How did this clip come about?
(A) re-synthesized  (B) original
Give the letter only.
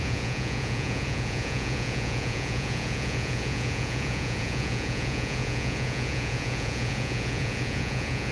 A